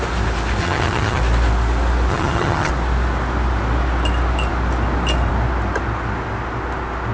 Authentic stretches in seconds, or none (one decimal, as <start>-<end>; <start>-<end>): 0.0-0.6; 1.2-2.1; 2.7-7.1